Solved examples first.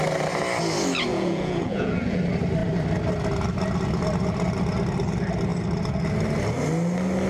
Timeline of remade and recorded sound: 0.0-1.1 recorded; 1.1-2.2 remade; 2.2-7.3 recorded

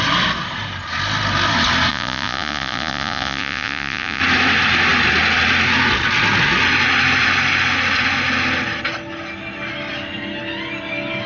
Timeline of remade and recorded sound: 0.0-1.9 recorded; 1.9-4.2 remade; 4.2-11.3 recorded

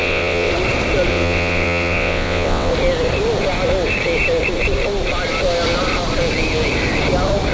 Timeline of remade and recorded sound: 0.0-0.5 remade; 0.5-1.1 recorded; 1.1-2.7 remade; 2.7-7.5 recorded

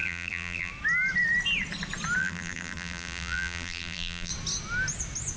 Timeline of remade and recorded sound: 0.0-0.7 remade; 0.7-2.2 recorded; 2.2-4.3 remade; 4.3-5.4 recorded